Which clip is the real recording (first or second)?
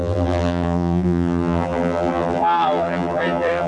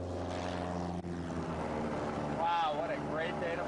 second